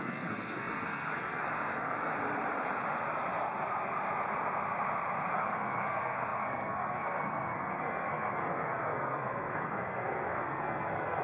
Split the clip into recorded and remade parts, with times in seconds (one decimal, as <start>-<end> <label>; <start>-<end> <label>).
0.0-2.1 remade; 2.1-5.3 recorded; 5.3-11.2 remade

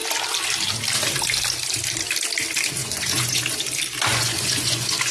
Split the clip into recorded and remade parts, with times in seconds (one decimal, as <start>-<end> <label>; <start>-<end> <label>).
0.0-2.8 recorded; 2.8-3.4 remade; 3.4-4.1 recorded; 4.1-5.1 remade

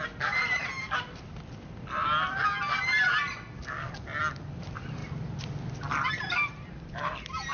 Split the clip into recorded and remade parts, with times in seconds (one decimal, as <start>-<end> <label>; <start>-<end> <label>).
0.0-2.1 remade; 2.1-4.5 recorded; 4.5-5.0 remade; 5.0-6.1 recorded; 6.1-7.5 remade

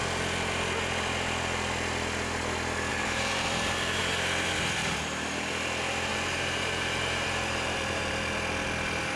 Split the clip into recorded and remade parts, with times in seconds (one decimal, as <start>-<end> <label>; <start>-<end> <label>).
0.0-2.9 recorded; 2.9-4.0 remade; 4.0-4.8 recorded; 4.8-5.5 remade; 5.5-6.1 recorded; 6.1-8.1 remade; 8.1-9.2 recorded

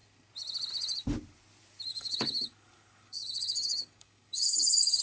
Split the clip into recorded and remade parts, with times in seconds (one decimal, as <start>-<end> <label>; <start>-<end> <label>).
0.0-1.9 recorded; 1.9-5.0 remade

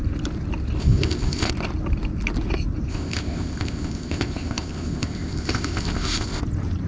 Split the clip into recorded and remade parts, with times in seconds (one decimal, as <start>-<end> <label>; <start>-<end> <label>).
0.0-0.8 recorded; 0.8-1.5 remade; 1.5-2.9 recorded; 2.9-6.4 remade; 6.4-6.9 recorded

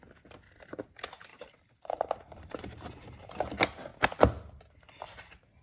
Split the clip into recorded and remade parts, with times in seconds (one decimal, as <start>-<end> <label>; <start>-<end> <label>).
0.0-1.3 recorded; 1.3-3.3 remade; 3.3-5.6 recorded